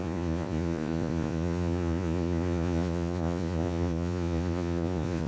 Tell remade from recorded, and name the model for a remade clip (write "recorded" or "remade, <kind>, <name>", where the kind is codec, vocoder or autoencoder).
remade, vocoder, Vocos